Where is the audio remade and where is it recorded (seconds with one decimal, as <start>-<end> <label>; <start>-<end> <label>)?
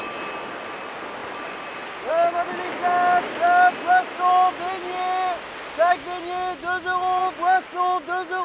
0.0-8.4 recorded